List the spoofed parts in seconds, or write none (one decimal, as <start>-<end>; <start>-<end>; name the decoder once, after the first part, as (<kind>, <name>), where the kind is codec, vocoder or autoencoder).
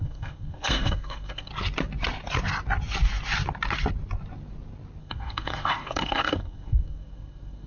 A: 0.0-1.5 (codec, SNAC); 5.0-7.7